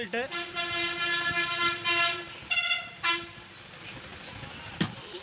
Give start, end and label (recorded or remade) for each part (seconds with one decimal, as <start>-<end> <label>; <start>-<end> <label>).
0.0-5.2 recorded